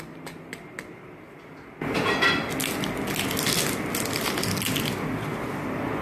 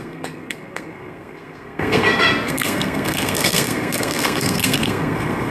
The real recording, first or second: first